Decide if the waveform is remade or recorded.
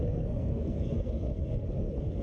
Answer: remade